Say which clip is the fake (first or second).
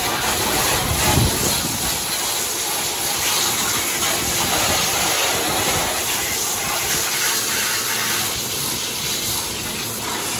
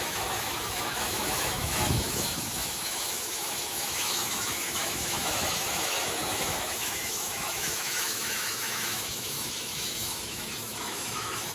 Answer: second